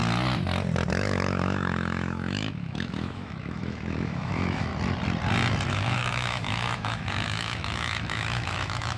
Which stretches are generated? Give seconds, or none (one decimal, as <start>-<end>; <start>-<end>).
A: 0.9-4.7; 5.7-9.0